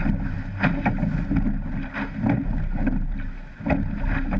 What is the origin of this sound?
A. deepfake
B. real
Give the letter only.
B